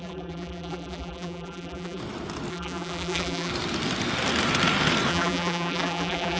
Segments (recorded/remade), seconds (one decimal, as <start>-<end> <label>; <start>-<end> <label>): 0.0-2.0 remade; 2.0-2.5 recorded; 2.5-3.5 remade; 3.5-5.1 recorded; 5.1-6.4 remade